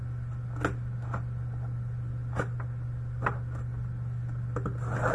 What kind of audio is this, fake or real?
real